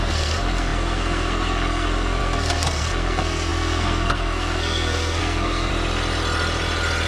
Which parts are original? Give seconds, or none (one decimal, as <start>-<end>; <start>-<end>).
5.7-7.1